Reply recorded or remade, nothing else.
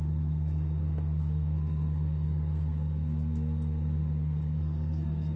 remade